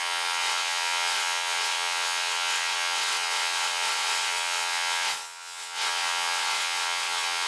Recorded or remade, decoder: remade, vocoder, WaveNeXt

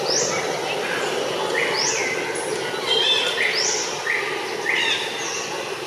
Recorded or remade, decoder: recorded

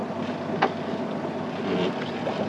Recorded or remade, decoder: recorded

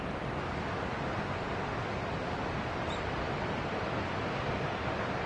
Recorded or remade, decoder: recorded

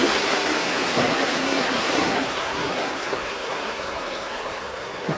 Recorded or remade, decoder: remade, codec, SNAC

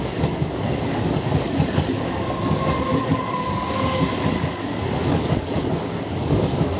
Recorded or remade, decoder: remade, codec, DAC